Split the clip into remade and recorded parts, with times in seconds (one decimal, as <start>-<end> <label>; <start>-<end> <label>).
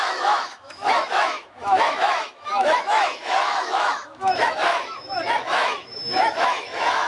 0.0-7.1 remade